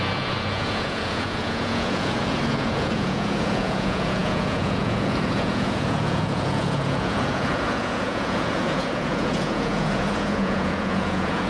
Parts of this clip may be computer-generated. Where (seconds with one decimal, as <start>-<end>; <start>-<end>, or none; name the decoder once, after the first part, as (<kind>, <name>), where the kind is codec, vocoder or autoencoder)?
0.0-11.5 (vocoder, Vocos)